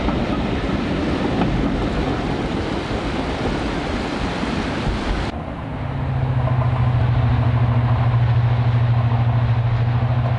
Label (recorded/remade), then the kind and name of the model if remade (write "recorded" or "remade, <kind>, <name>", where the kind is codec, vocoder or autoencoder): recorded